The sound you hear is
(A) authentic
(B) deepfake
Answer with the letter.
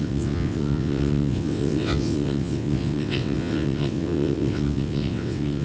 B